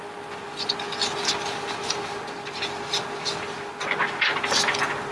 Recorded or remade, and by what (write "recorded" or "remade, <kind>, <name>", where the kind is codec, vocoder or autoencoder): recorded